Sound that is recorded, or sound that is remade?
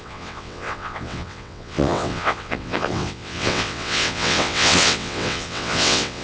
remade